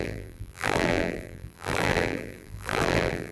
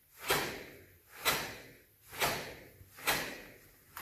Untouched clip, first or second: second